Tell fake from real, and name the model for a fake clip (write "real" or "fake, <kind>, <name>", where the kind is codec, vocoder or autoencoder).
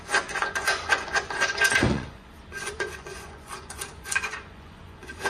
fake, vocoder, Vocos